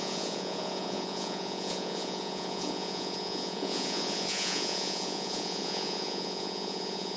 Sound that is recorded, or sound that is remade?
remade